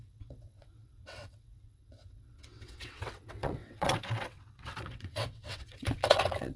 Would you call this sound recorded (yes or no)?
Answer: no